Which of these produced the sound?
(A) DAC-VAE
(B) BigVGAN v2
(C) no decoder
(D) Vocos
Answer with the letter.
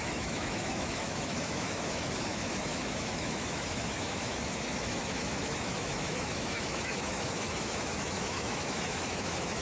A